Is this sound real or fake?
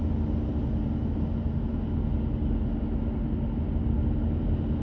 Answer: real